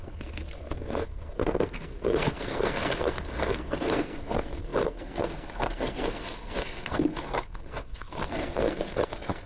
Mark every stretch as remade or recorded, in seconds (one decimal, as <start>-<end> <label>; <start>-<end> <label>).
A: 0.0-9.5 remade